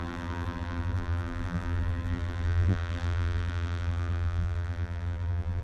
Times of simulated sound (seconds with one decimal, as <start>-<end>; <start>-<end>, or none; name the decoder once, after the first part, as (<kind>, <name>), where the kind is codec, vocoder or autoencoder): 0.0-5.6 (vocoder, BigVGAN v2)